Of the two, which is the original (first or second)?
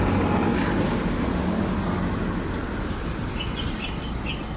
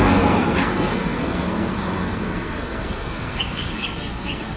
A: first